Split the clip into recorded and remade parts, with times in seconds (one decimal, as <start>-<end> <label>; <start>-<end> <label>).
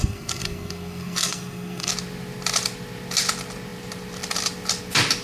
0.0-1.9 remade; 1.9-5.2 recorded